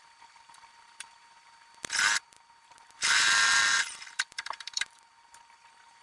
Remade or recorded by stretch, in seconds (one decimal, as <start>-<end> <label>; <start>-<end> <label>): 0.0-1.7 remade; 1.7-2.3 recorded; 2.3-6.0 remade

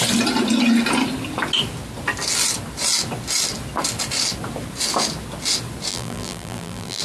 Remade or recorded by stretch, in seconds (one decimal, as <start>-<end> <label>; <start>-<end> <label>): 0.0-5.9 recorded; 5.9-7.0 remade

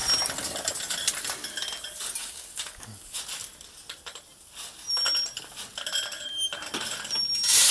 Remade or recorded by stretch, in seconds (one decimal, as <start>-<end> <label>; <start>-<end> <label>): 0.0-2.2 recorded; 2.2-3.2 remade; 3.2-7.7 recorded

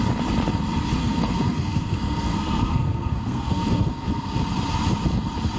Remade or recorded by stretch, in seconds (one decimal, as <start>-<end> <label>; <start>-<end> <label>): 0.0-1.0 recorded; 1.0-4.4 remade; 4.4-5.6 recorded

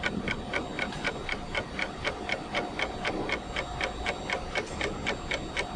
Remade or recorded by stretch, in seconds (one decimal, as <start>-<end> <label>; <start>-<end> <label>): 0.0-5.8 recorded

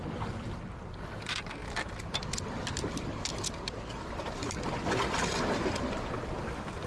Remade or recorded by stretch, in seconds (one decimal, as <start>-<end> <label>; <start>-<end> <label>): 0.0-6.9 recorded

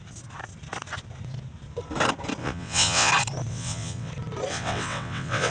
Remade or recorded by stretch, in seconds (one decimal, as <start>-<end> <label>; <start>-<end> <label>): 0.0-2.4 recorded; 2.4-3.1 remade; 3.1-3.5 recorded; 3.5-4.1 remade; 4.1-4.5 recorded; 4.5-5.5 remade